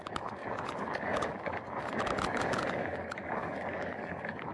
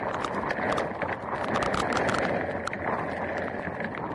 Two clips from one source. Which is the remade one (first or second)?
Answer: first